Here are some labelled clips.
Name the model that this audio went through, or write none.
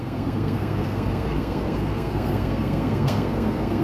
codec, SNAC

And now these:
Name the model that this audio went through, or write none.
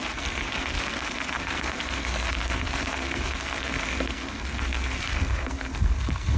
codec, SNAC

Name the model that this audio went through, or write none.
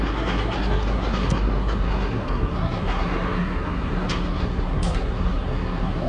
codec, SNAC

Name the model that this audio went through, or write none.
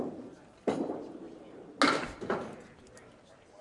none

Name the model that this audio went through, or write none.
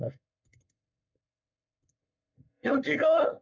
codec, SNAC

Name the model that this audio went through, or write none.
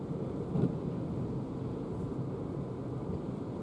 none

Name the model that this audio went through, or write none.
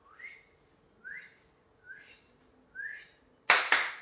none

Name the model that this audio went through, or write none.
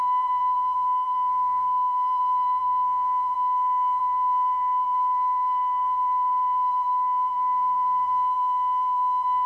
codec, SNAC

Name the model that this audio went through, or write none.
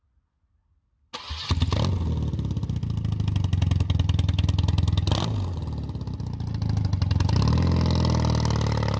none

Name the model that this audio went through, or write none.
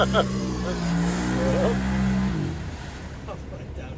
none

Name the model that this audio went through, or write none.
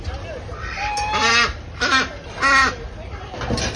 none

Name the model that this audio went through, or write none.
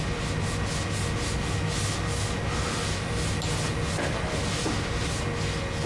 none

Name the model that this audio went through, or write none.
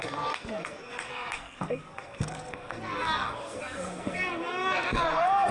codec, SNAC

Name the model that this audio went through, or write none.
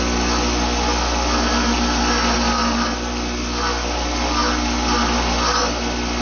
none